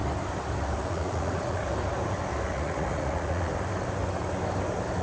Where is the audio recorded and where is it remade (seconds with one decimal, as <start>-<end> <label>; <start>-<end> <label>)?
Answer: 0.0-0.8 recorded; 0.8-1.6 remade; 1.6-2.5 recorded; 2.5-3.5 remade; 3.5-5.0 recorded